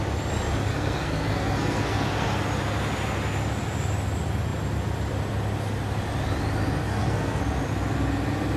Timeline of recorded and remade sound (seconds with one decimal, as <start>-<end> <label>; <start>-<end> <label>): 0.0-0.7 recorded; 0.7-2.4 remade; 2.4-6.8 recorded; 6.8-7.4 remade; 7.4-8.6 recorded